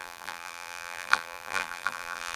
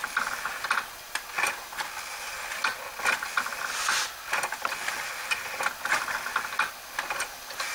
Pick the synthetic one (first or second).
first